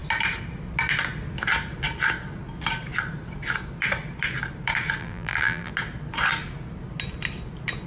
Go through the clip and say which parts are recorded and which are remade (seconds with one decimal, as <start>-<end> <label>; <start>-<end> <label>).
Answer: 0.0-5.0 recorded; 5.0-5.7 remade; 5.7-7.9 recorded